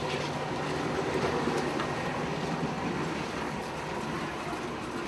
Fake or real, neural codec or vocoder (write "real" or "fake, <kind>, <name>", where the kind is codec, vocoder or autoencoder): real